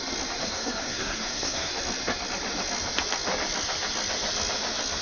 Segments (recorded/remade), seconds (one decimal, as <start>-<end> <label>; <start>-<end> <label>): 0.0-0.4 recorded; 0.4-1.7 remade; 1.7-5.0 recorded